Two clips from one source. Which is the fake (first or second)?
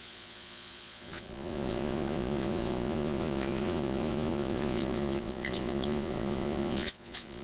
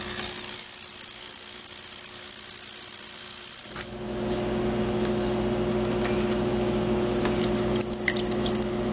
first